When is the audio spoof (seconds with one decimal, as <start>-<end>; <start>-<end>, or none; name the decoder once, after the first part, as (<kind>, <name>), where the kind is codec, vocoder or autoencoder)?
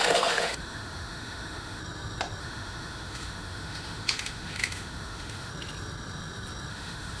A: 0.0-1.8 (autoencoder, DAC-VAE); 2.4-5.5; 6.7-7.2